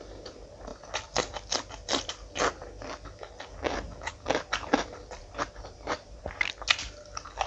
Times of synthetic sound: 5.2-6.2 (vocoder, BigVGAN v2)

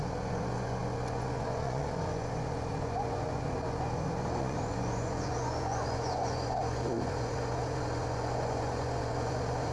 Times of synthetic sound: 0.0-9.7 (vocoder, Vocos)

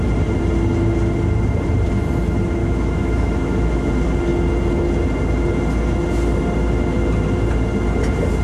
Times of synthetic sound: 2.6-3.9 (autoencoder, DAC-VAE)

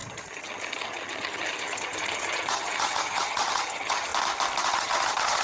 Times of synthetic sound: 0.0-4.1 (vocoder, HiFi-GAN); 4.6-5.4

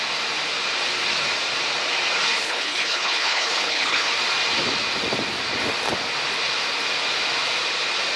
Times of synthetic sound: 2.4-4.1 (codec, HILCodec)

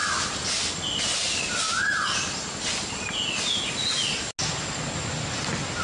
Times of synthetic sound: none